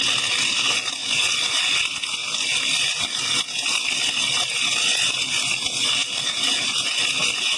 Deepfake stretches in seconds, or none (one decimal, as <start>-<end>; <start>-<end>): 2.2-3.0